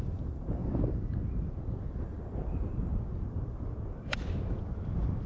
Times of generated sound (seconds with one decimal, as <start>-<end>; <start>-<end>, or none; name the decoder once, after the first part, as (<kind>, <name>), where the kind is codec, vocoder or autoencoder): 0.0-0.6 (vocoder, BigVGAN v2); 2.0-2.9